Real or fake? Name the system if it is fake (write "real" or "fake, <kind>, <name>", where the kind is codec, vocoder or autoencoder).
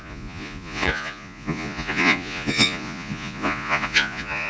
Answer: fake, vocoder, Vocos